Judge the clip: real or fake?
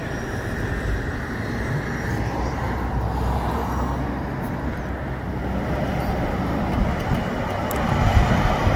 real